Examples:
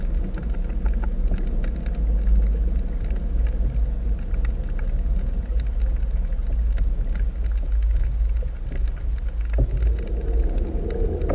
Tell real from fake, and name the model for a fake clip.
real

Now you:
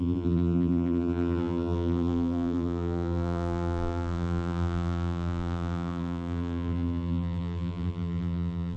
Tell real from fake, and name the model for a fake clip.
fake, vocoder, BigVGAN v2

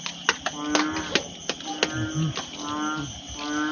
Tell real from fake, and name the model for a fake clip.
real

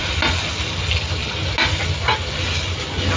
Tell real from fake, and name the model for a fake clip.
real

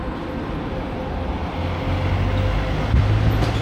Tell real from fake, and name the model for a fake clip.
real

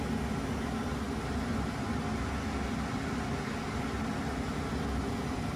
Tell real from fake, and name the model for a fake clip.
real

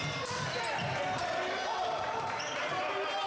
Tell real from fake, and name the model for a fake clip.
real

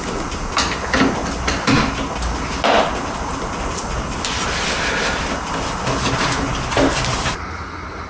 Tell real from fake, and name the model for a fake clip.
real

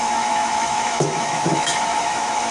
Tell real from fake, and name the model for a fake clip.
fake, autoencoder, DAC-VAE